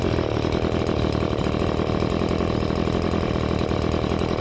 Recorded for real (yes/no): yes